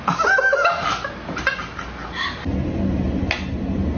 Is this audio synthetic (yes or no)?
no